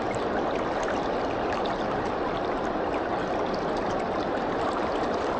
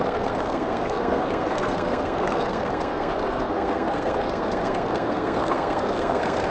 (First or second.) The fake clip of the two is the second